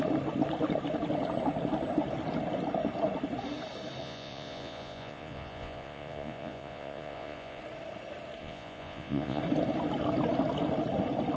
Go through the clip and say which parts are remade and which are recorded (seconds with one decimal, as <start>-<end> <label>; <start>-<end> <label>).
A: 0.0-4.0 recorded; 4.0-7.6 remade; 7.6-8.4 recorded; 8.4-9.4 remade; 9.4-11.4 recorded